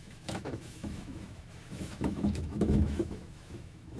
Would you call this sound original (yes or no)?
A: no